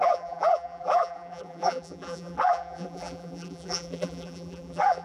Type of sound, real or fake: fake